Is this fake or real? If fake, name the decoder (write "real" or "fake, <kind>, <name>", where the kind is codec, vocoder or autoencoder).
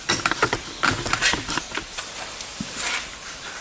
real